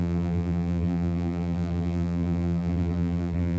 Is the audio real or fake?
fake